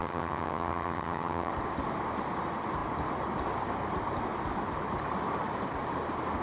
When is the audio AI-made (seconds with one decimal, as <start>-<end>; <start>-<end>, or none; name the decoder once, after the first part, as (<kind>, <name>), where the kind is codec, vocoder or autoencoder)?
0.0-1.5 (vocoder, HiFi-GAN)